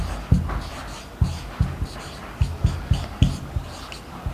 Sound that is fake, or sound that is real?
real